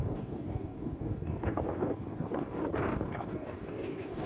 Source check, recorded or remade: remade